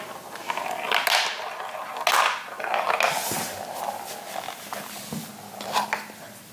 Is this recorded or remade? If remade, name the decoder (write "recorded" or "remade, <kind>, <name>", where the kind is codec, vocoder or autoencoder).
recorded